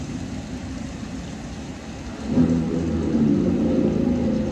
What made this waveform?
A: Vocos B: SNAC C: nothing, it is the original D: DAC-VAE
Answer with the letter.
C